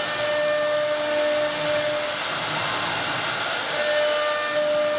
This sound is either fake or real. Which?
real